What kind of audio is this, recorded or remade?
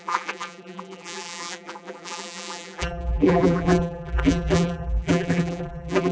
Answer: remade